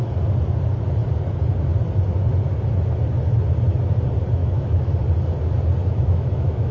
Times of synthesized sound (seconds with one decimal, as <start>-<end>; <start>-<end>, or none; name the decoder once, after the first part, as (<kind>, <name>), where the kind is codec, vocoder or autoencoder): 4.4-4.9 (autoencoder, DAC-VAE); 5.8-6.7